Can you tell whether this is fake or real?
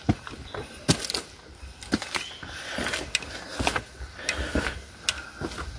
real